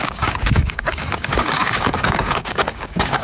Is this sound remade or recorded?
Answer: remade